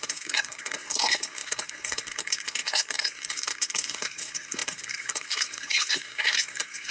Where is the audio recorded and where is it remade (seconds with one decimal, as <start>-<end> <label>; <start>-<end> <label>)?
0.0-6.9 remade

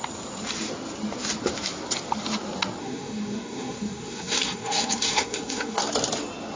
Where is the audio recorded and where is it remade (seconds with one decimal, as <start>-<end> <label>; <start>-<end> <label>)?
0.0-2.8 recorded; 2.8-5.8 remade; 5.8-6.6 recorded